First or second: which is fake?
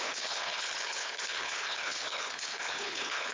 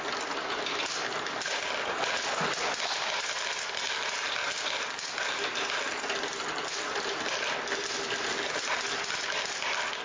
first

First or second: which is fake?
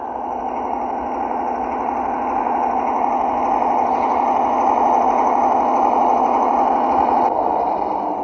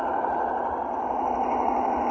second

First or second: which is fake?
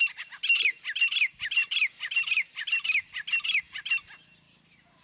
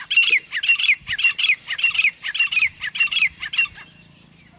second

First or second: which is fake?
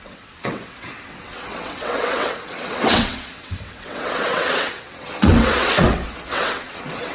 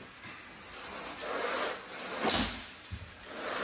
first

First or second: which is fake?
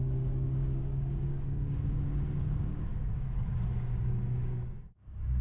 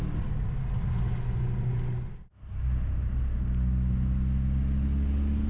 first